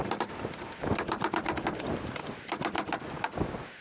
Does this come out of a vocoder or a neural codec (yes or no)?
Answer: no